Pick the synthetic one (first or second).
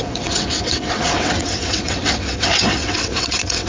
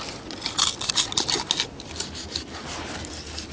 first